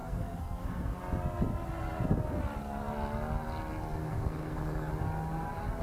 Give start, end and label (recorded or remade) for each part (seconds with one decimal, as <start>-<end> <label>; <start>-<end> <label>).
0.0-1.0 remade; 1.0-4.0 recorded; 4.0-4.9 remade; 4.9-5.8 recorded